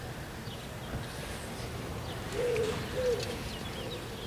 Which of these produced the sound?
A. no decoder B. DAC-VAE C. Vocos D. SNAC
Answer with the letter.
A